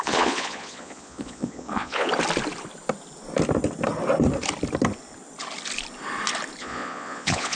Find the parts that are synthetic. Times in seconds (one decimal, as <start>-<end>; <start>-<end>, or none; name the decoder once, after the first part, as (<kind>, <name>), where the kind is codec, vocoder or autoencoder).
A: 0.0-2.1 (vocoder, Vocos); 6.6-7.5

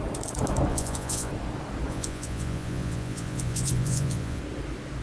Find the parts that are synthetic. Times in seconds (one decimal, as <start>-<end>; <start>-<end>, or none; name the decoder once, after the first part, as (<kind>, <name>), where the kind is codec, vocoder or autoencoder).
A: 0.7-1.3 (vocoder, Vocos); 1.9-4.4

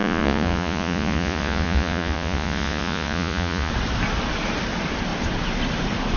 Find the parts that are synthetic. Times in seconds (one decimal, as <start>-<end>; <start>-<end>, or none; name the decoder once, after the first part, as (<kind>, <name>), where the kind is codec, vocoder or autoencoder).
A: 0.0-3.7 (vocoder, Vocos)